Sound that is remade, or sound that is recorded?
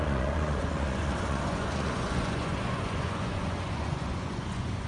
remade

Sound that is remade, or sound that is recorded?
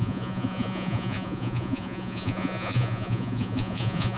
remade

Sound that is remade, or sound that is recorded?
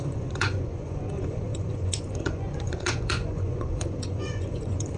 remade